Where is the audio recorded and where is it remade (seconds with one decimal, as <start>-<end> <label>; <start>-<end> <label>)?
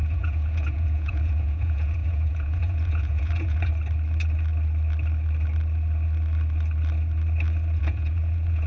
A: 0.0-3.7 remade; 3.7-7.8 recorded; 7.8-8.7 remade